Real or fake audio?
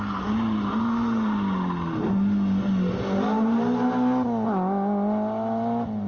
real